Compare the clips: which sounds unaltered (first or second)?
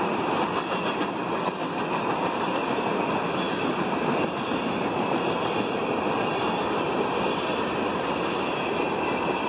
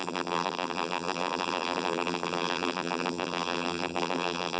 first